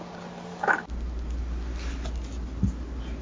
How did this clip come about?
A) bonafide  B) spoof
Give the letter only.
A